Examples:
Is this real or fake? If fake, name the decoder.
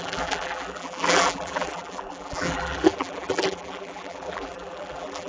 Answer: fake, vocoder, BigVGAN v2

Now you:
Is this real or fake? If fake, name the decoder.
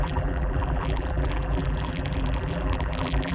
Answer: fake, vocoder, BigVGAN v2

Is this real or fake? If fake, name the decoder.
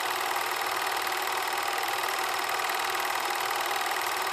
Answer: fake, vocoder, BigVGAN v2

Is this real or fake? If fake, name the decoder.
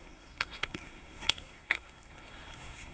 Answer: fake, codec, SNAC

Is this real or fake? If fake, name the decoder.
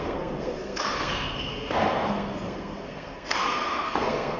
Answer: fake, codec, SNAC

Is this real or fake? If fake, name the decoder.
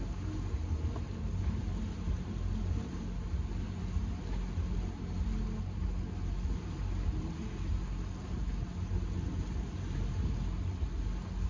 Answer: real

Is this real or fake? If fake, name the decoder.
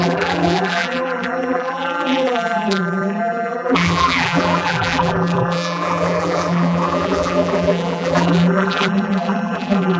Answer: fake, vocoder, BigVGAN v2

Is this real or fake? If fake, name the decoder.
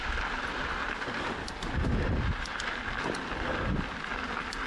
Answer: real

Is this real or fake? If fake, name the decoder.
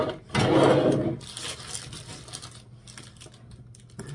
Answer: real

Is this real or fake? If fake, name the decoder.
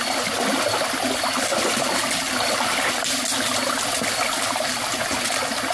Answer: real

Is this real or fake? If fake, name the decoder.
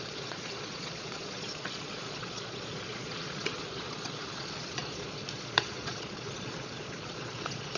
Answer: fake, vocoder, Vocos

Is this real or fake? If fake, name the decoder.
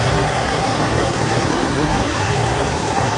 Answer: fake, codec, SNAC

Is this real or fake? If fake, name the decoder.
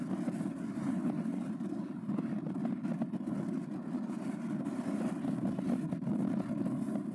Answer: real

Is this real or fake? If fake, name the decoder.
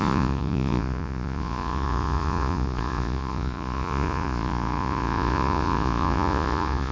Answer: fake, vocoder, Vocos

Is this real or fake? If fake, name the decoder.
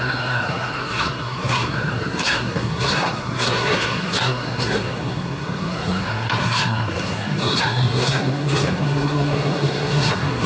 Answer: fake, codec, SNAC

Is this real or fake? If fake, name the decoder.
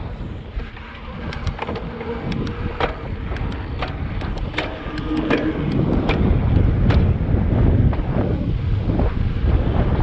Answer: real